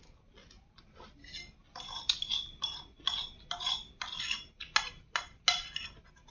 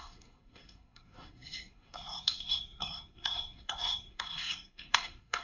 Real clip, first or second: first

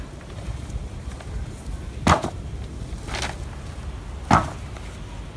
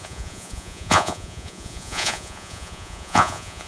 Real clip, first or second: first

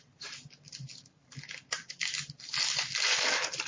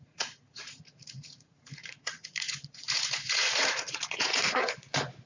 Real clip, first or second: first